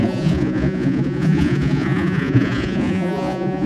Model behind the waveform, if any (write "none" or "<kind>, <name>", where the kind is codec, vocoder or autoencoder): vocoder, Vocos